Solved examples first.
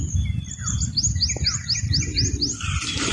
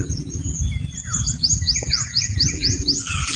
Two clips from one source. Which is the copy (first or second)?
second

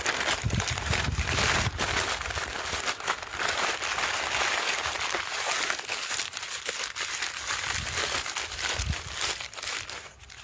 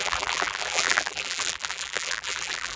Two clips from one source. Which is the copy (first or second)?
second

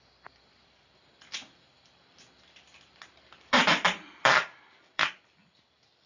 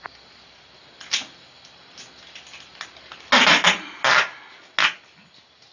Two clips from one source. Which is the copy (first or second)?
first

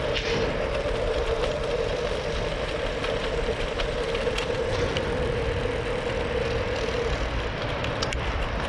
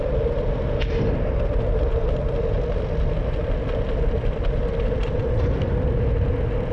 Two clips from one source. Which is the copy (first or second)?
first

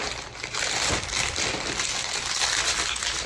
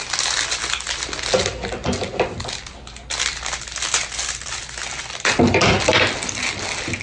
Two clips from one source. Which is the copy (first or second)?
first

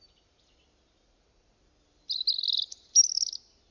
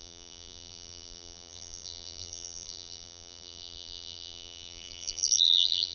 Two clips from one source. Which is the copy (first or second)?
second